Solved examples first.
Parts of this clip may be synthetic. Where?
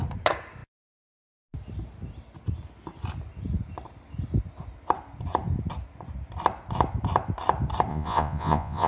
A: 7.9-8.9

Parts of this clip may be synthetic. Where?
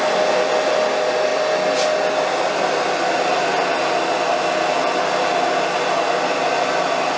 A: none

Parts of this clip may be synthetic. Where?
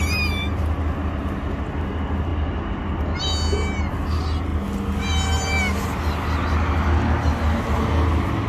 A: none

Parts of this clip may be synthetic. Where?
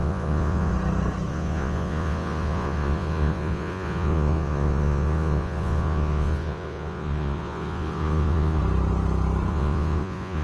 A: 0.0-0.7; 1.3-8.6; 9.5-10.4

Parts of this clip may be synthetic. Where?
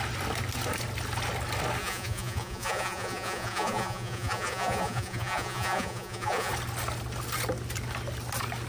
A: 1.8-6.5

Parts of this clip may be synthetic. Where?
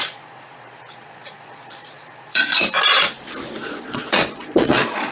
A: 0.0-2.6; 3.6-5.1